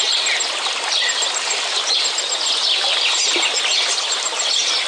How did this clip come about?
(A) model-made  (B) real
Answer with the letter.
B